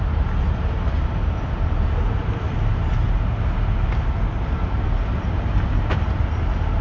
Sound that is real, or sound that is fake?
real